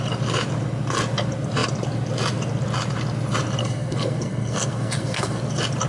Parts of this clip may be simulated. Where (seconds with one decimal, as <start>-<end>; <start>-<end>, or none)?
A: 3.6-5.4